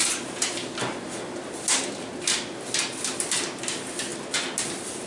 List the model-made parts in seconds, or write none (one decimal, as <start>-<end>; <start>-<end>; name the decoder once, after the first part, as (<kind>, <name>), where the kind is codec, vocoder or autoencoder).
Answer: none